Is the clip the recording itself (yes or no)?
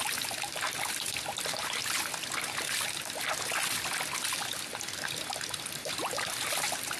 yes